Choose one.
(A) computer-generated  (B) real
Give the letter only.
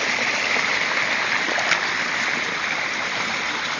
B